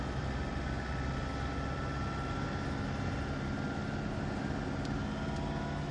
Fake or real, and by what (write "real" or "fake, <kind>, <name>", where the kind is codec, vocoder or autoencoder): real